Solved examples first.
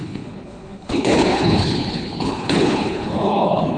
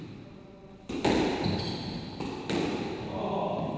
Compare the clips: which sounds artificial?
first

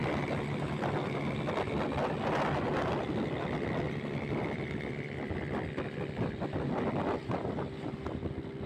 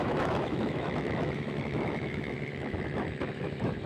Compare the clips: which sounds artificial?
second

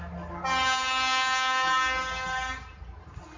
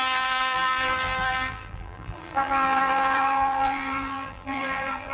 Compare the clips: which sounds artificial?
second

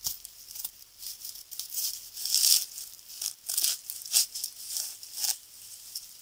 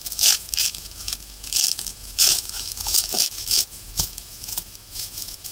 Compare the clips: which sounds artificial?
second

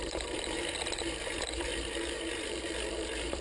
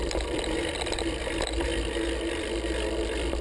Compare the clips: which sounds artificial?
first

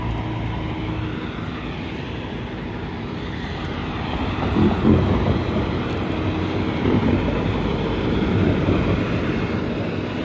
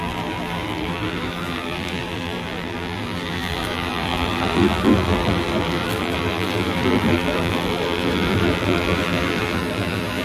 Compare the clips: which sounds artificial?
second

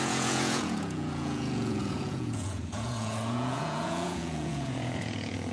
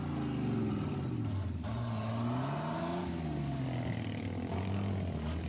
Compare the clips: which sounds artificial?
first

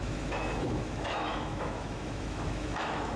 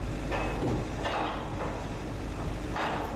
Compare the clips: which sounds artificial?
first